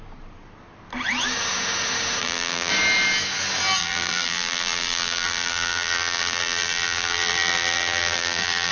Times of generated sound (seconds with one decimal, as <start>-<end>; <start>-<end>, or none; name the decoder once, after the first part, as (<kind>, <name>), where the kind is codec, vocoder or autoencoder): 2.2-2.7 (vocoder, BigVGAN v2); 3.8-8.7